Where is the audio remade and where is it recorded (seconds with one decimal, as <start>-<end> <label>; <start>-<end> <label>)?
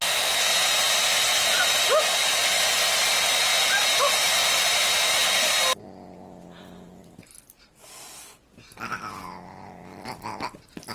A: 0.0-10.9 recorded